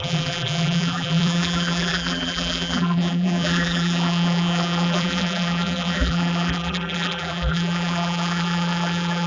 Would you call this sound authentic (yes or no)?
no